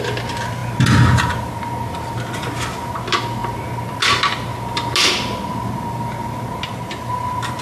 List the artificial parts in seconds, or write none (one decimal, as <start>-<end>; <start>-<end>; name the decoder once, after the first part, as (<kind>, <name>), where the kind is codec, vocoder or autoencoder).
none